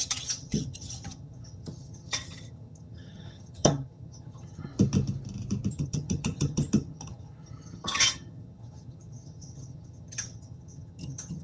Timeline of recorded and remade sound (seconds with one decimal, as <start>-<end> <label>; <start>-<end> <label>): 0.0-4.7 remade; 4.7-5.7 recorded; 5.7-11.4 remade